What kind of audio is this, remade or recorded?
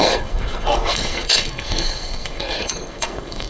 remade